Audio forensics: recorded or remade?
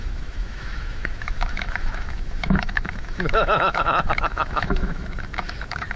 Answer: remade